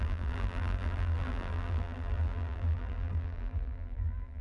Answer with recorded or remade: remade